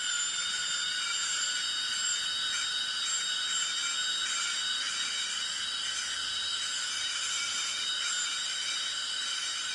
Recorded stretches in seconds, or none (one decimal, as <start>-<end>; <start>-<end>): 0.0-9.7